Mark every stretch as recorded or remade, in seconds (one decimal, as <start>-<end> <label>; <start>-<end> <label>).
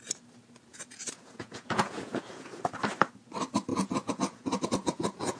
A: 0.0-0.7 recorded; 0.7-2.6 remade; 2.6-3.7 recorded; 3.7-5.4 remade